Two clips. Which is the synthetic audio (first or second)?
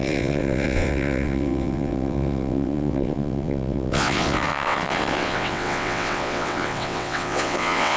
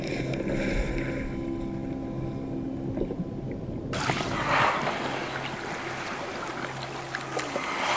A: first